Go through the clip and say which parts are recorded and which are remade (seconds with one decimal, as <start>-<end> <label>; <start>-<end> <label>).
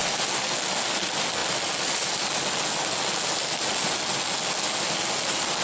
0.0-5.6 recorded